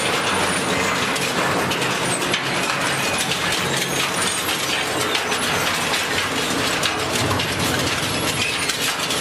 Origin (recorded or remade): recorded